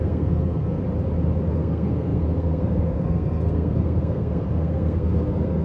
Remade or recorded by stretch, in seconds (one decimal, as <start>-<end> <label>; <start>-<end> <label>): 0.0-0.8 remade; 0.8-1.5 recorded; 1.5-5.6 remade